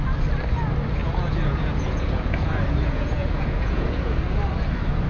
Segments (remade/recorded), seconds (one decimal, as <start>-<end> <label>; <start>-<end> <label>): 0.0-1.0 recorded; 1.0-4.1 remade; 4.1-5.1 recorded